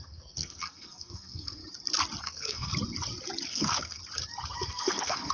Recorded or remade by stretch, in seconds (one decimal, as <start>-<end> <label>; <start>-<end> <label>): 0.0-1.6 remade; 1.6-2.2 recorded; 2.2-2.7 remade; 2.7-3.5 recorded; 3.5-4.0 remade; 4.0-4.7 recorded; 4.7-5.3 remade